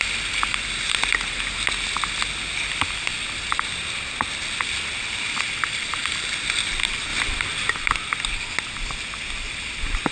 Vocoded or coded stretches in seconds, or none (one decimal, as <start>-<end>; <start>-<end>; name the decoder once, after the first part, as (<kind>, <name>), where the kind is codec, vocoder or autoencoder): none